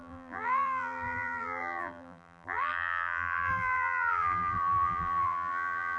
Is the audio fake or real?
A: fake